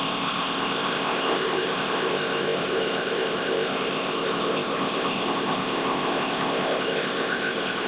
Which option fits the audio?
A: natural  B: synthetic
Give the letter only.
B